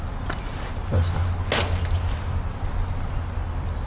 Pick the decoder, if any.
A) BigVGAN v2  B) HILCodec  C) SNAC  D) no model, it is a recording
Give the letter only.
D